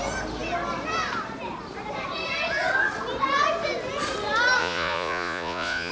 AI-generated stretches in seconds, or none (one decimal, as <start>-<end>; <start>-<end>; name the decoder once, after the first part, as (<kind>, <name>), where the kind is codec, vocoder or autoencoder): 4.6-5.9 (vocoder, Vocos)